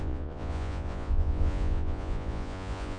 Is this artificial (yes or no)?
yes